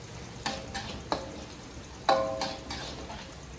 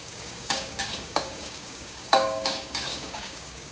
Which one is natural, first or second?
first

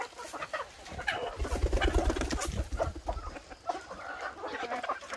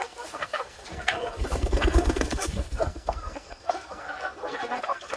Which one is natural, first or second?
first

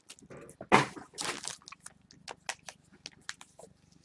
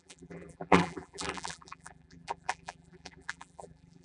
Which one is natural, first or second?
first